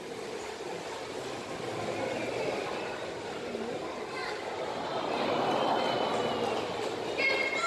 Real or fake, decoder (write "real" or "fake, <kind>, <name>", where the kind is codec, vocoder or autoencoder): real